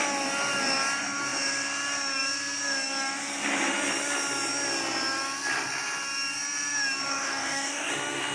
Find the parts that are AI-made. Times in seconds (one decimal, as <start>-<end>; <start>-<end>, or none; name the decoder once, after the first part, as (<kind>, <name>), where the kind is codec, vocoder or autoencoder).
7.1-7.9 (codec, DAC)